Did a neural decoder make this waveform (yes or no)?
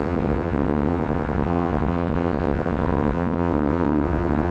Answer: yes